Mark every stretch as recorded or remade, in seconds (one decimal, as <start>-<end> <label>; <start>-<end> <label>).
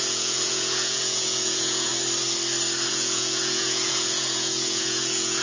0.0-1.9 remade; 1.9-2.9 recorded; 2.9-5.4 remade